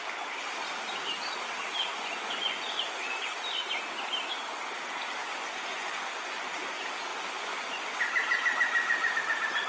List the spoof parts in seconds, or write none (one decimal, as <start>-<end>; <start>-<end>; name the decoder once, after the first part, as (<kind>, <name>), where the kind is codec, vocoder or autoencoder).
1.9-3.3 (vocoder, Vocos); 5.2-6.5; 7.1-8.0